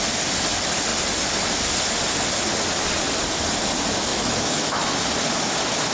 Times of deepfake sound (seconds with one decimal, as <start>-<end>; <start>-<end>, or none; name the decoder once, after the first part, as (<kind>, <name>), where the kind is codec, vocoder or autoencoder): 4.1-5.0 (autoencoder, DAC-VAE)